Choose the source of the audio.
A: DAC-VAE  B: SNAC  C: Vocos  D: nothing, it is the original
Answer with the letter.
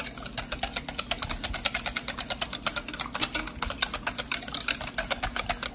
D